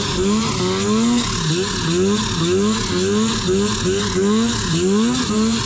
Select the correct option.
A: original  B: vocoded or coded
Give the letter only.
A